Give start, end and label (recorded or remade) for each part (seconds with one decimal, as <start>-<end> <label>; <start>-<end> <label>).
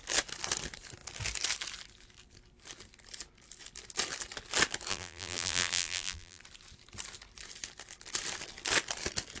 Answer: 0.0-4.9 recorded; 4.9-6.4 remade; 6.4-9.4 recorded